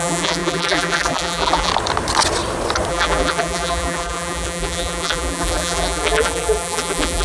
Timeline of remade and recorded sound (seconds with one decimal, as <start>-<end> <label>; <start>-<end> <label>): 0.0-1.7 remade; 1.7-2.9 recorded; 2.9-7.2 remade